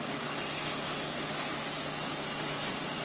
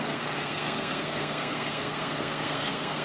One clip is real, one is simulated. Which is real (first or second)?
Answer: first